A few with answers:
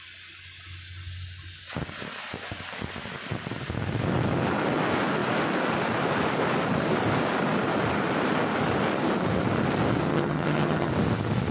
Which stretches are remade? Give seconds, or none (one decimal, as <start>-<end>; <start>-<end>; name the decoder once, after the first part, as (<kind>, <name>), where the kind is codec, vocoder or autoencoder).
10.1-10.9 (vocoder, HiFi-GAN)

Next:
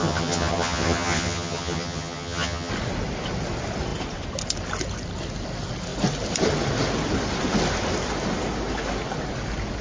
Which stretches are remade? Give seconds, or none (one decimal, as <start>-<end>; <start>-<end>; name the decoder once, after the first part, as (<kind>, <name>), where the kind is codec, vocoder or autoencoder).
0.0-2.7 (vocoder, HiFi-GAN)

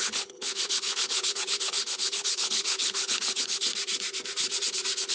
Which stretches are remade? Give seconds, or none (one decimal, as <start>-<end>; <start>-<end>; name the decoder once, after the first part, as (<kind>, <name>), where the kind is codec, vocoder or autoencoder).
0.0-3.7 (codec, HILCodec)